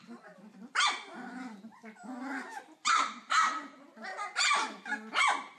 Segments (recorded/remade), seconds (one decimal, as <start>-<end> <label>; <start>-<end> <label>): 0.0-1.7 remade; 1.7-2.6 recorded; 2.6-4.1 remade; 4.1-5.6 recorded

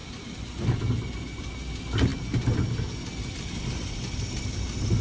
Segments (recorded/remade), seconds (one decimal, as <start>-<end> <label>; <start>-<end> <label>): 0.0-5.0 recorded

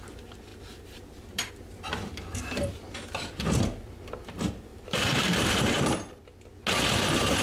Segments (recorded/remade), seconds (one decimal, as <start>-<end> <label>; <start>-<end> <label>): 0.0-0.5 recorded; 0.5-1.5 remade; 1.5-4.7 recorded; 4.7-6.2 remade; 6.2-7.4 recorded